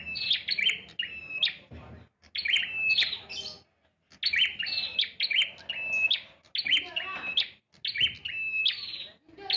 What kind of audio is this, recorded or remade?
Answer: recorded